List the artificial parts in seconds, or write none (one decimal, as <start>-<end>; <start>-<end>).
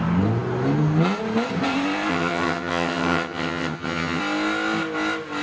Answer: 2.1-4.2